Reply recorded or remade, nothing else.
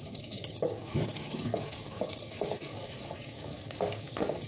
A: remade